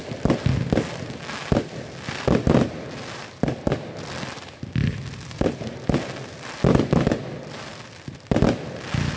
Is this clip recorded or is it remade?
recorded